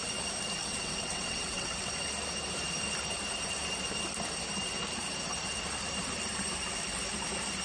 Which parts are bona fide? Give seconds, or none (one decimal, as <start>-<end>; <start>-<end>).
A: 0.0-0.6; 1.9-7.6